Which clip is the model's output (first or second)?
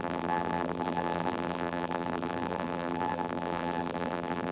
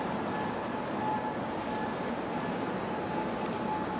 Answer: first